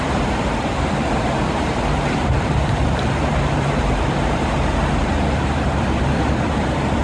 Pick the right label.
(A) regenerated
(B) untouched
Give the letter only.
A